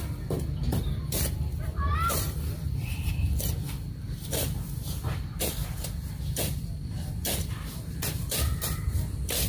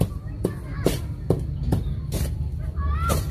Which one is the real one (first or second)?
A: second